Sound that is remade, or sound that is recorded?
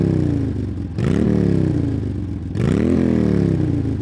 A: recorded